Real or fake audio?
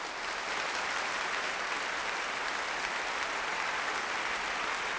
real